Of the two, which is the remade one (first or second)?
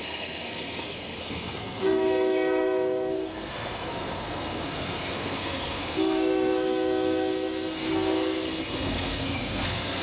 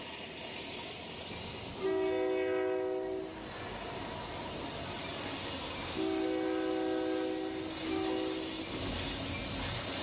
first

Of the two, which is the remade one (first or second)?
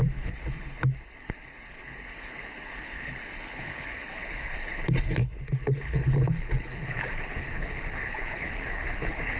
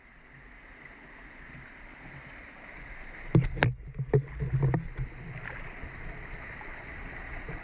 first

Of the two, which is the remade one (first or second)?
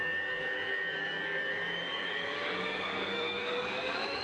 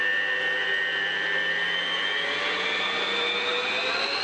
first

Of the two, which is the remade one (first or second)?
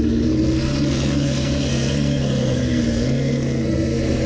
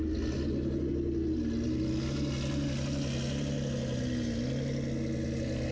first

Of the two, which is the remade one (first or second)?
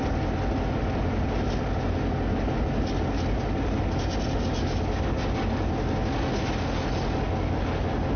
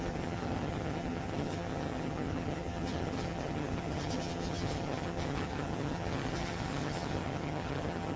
second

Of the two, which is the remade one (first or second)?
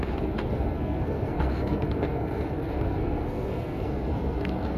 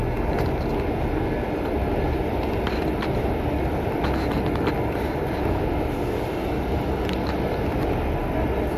first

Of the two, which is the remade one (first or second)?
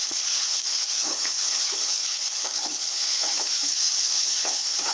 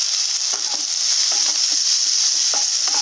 first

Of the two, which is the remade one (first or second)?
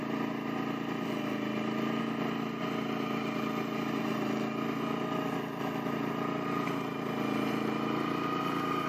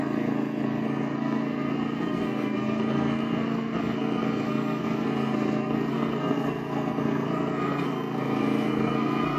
second